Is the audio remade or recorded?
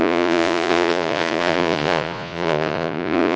remade